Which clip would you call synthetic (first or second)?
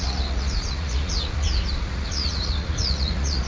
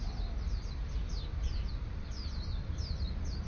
first